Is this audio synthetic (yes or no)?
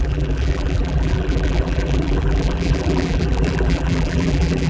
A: yes